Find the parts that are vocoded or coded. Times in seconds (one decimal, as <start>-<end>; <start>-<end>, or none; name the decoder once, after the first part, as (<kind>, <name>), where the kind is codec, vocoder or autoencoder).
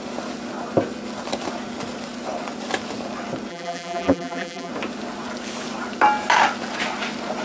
3.5-4.7 (vocoder, BigVGAN v2)